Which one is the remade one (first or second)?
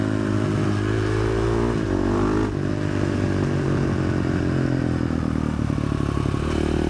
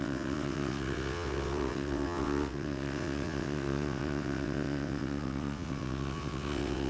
second